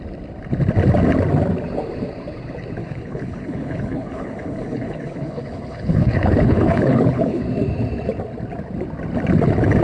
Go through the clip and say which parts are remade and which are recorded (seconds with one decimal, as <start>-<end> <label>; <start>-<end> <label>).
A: 0.0-2.8 recorded; 2.8-7.4 remade; 7.4-9.8 recorded